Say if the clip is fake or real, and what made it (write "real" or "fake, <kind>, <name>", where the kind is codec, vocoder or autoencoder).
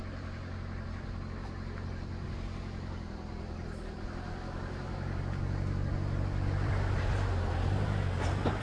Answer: real